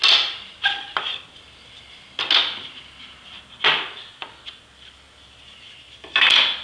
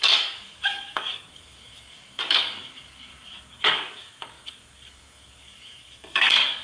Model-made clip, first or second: second